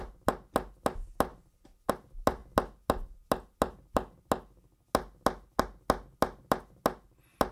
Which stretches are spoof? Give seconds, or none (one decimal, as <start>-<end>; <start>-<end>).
none